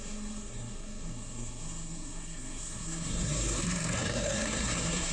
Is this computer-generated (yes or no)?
yes